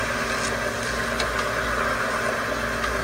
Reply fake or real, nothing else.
real